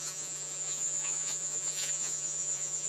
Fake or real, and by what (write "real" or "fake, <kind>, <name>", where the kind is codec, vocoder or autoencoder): fake, vocoder, Vocos